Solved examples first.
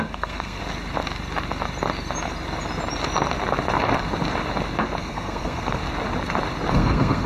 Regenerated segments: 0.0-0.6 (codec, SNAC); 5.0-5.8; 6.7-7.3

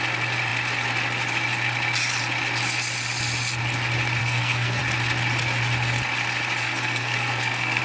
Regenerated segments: 4.2-4.8 (codec, SNAC); 6.6-7.8

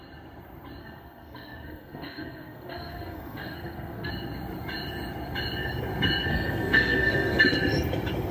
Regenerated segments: 0.8-4.1 (codec, SNAC); 6.3-7.4

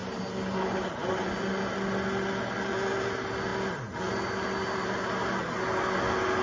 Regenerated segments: none

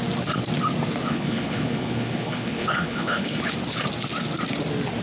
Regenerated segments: 1.1-3.4 (codec, HILCodec)

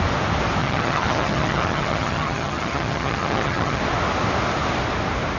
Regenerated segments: 0.6-3.8 (vocoder, HiFi-GAN)

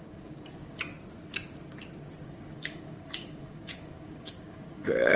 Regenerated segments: 0.0-0.9 (codec, DAC); 2.2-5.2

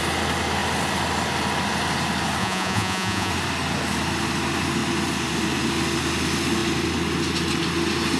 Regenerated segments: 2.4-3.3 (vocoder, Vocos)